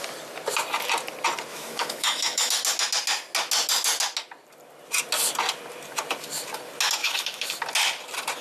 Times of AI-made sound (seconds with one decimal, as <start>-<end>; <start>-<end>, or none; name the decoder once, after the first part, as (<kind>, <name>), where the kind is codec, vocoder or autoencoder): 1.5-2.5 (autoencoder, DAC-VAE); 7.0-7.6